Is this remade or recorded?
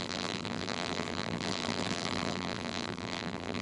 remade